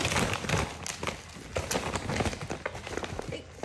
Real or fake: real